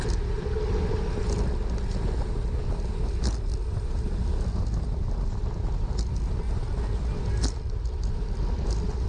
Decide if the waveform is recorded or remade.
recorded